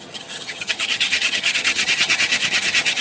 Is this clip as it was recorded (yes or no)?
no